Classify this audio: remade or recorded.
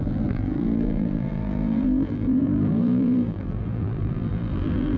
remade